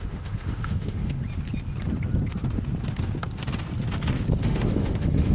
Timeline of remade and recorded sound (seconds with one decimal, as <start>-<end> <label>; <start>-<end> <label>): 0.0-1.2 remade; 1.2-4.4 recorded; 4.4-5.3 remade